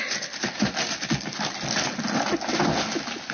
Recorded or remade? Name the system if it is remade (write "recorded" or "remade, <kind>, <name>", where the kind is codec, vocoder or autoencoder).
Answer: recorded